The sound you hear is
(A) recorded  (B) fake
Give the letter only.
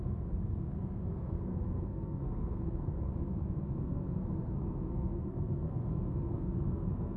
B